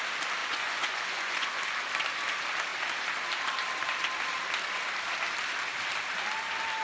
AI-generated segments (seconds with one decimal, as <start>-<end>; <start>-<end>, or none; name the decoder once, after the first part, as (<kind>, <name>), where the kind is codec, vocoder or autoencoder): 0.4-1.6 (vocoder, Vocos)